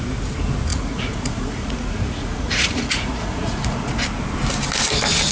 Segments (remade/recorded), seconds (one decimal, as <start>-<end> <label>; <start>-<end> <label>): 0.0-0.7 recorded; 0.7-3.9 remade; 3.9-5.3 recorded